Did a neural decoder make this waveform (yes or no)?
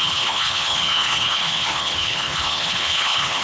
yes